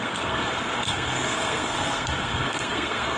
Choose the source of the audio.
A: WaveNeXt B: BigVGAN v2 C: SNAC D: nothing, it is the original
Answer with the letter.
C